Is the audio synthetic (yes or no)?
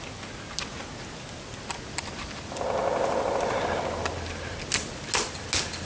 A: no